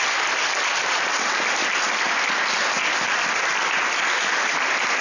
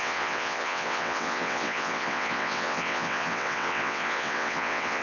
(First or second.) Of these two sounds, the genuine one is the first